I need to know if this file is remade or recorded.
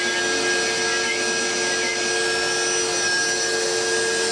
recorded